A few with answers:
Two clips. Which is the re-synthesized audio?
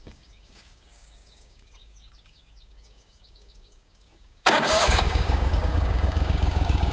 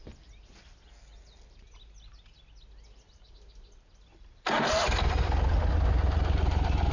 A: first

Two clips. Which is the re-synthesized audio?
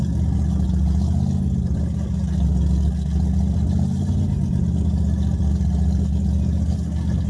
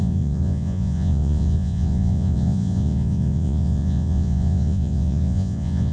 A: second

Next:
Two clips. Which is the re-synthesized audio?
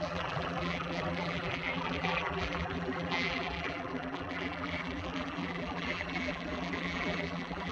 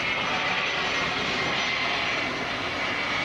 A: first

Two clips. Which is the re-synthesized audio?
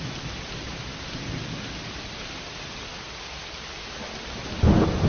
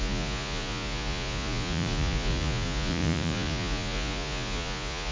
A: second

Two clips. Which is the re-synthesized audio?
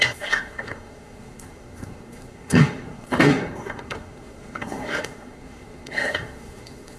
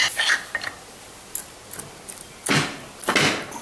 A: first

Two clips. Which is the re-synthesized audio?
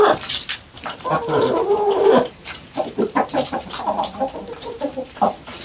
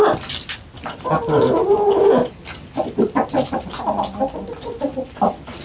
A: first